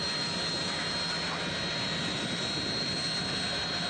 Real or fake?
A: real